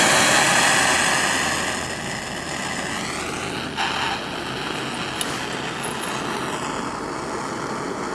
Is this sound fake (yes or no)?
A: no